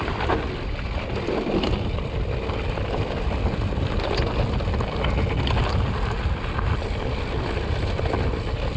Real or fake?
real